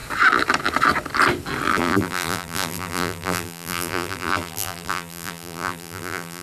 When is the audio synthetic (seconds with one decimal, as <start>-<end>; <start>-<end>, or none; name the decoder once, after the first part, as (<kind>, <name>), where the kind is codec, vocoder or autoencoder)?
1.7-6.4 (vocoder, BigVGAN v2)